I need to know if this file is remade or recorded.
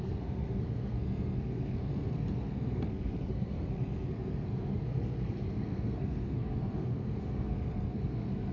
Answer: remade